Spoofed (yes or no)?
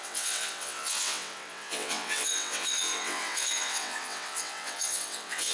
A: yes